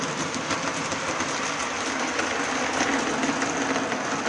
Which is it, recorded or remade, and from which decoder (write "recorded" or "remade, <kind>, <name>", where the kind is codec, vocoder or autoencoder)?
recorded